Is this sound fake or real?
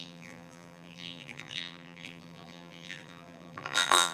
fake